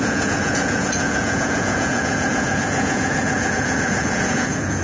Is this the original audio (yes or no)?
no